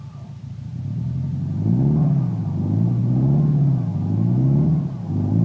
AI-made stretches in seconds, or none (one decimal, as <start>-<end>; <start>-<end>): none